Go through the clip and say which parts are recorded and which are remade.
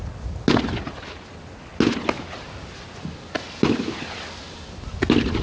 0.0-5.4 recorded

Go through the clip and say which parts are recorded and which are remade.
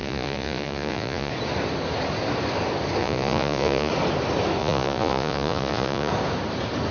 0.0-1.3 remade; 1.3-3.0 recorded; 3.0-3.9 remade; 3.9-4.6 recorded; 4.6-6.1 remade; 6.1-6.9 recorded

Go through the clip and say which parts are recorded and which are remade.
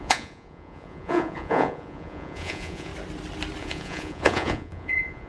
0.0-2.9 remade; 2.9-3.6 recorded; 3.6-5.3 remade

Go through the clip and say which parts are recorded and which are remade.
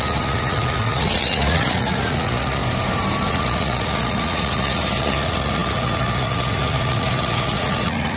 0.0-2.6 remade; 2.6-3.3 recorded; 3.3-8.2 remade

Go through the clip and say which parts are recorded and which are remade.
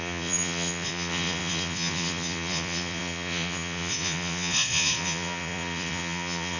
0.0-6.6 remade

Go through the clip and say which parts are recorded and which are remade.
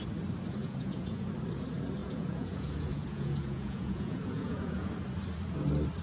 0.0-0.6 recorded; 0.6-1.3 remade; 1.3-2.0 recorded; 2.0-4.9 remade; 4.9-6.0 recorded